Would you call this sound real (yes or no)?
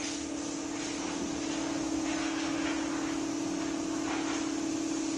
yes